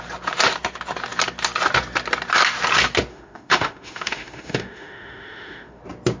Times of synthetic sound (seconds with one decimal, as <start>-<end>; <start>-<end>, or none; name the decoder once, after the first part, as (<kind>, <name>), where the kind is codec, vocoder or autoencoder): 3.1-5.8 (autoencoder, DAC-VAE)